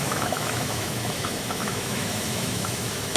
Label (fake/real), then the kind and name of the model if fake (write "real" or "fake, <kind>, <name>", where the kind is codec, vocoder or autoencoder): fake, autoencoder, DAC-VAE